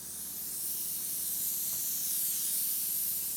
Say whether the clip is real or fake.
real